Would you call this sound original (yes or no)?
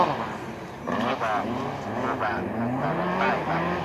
yes